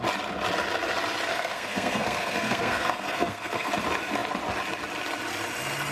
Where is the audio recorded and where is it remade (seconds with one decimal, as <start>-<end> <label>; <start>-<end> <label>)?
0.0-1.3 recorded; 1.3-3.7 remade; 3.7-5.9 recorded